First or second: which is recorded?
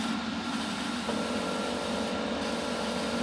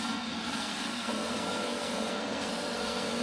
first